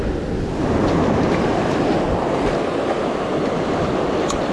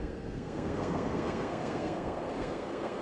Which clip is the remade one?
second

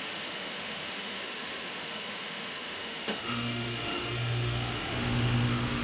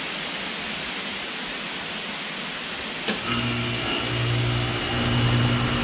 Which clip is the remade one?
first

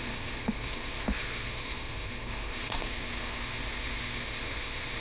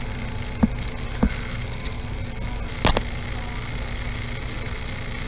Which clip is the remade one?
first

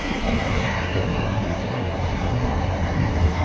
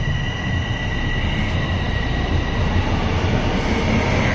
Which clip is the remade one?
first